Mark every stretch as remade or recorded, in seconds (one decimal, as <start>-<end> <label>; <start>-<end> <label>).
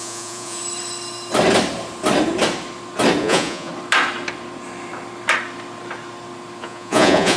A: 0.0-0.6 remade; 0.6-3.2 recorded; 3.2-3.7 remade; 3.7-6.6 recorded; 6.6-7.4 remade